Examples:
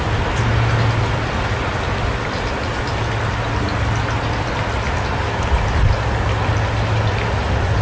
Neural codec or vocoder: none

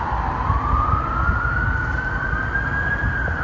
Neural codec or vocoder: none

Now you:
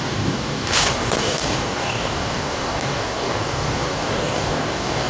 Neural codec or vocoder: codec, DAC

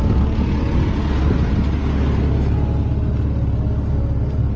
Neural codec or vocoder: none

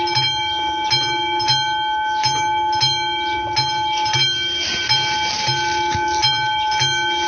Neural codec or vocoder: none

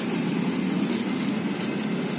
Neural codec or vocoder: none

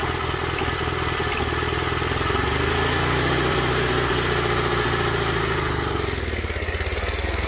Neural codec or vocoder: none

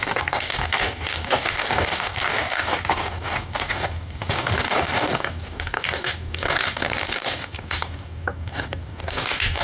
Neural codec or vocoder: codec, DAC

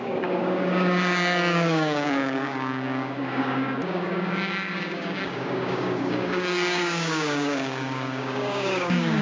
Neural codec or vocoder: codec, DAC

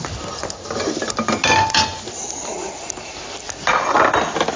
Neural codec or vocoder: none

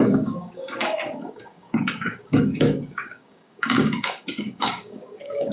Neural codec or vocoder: codec, DAC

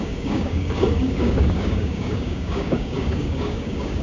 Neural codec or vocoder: codec, DAC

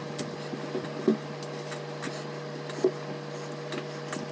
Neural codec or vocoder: none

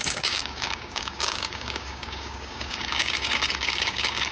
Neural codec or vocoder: codec, DAC